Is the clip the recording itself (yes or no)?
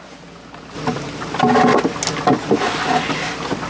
yes